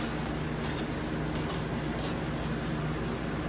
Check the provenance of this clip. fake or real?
real